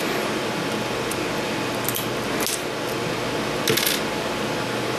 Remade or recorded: recorded